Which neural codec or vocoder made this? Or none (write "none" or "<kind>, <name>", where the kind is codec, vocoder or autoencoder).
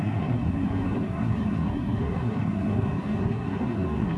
codec, SNAC